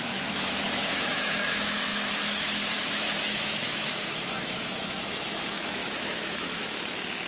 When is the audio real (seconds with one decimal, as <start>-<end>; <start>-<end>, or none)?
none